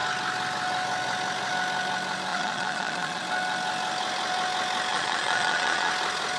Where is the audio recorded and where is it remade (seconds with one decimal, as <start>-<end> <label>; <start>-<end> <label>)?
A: 0.0-2.3 recorded; 2.3-3.2 remade; 3.2-4.9 recorded; 4.9-5.9 remade; 5.9-6.4 recorded